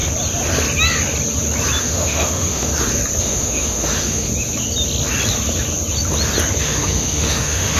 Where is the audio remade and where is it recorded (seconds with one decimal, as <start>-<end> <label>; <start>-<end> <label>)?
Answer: 0.0-1.8 recorded; 1.8-2.7 remade; 2.7-3.2 recorded; 3.2-4.3 remade; 4.3-6.6 recorded; 6.6-7.8 remade